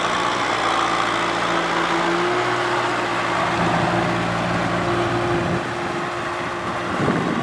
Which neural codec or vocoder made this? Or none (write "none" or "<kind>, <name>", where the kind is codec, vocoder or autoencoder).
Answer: none